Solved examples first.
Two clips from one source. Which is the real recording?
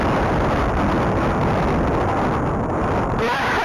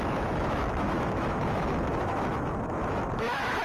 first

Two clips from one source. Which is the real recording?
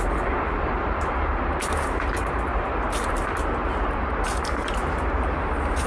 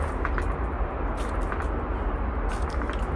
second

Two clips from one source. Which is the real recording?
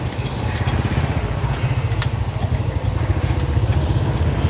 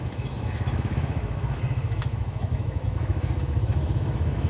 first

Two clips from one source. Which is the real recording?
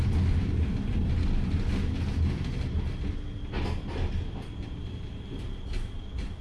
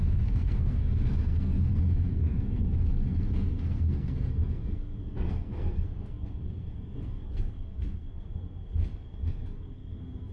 first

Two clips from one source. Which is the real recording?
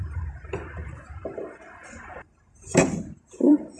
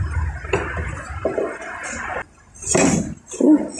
second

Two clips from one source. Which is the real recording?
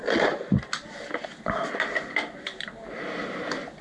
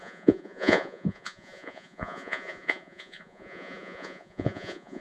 first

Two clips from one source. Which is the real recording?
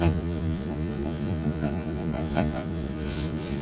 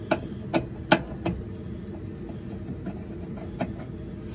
second